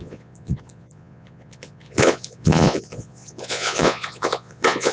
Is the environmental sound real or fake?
fake